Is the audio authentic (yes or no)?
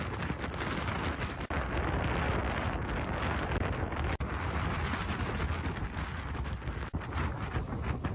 yes